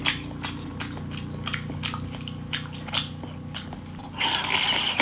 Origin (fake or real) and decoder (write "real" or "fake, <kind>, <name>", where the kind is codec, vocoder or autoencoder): real